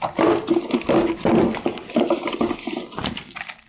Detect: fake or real fake